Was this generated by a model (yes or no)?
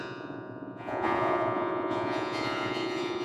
yes